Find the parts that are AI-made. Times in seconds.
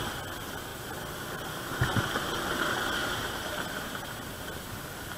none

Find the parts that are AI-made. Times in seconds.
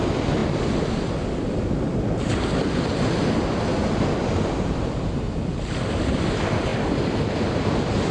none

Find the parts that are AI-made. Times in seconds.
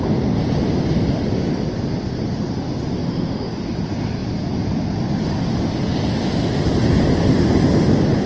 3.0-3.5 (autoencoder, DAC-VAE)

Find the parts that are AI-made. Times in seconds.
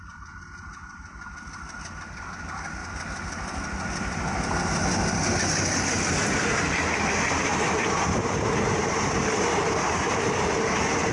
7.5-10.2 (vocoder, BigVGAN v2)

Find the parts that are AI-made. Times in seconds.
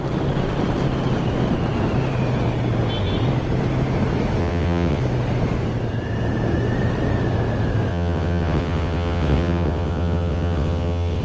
4.4-5.0 (vocoder, WaveNeXt); 7.9-11.2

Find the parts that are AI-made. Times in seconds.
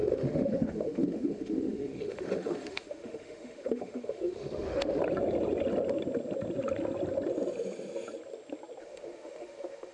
0.0-5.0 (autoencoder, DAC-VAE); 8.8-9.9